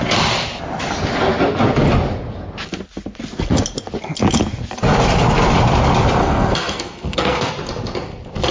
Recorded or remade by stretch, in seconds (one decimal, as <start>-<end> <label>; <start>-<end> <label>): 0.0-6.2 recorded; 6.2-7.5 remade; 7.5-8.5 recorded